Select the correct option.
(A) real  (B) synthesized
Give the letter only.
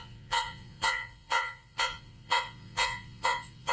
B